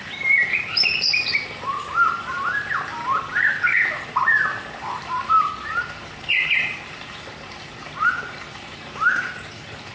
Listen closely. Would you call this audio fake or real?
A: fake